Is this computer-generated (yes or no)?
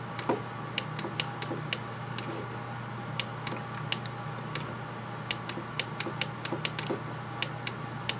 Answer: no